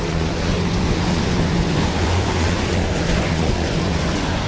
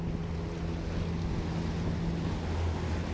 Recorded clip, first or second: second